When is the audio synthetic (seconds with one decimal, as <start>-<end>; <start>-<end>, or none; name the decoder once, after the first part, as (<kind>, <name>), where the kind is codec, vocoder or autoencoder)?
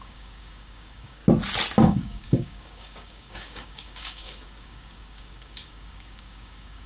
0.0-1.2 (codec, DAC); 1.8-6.9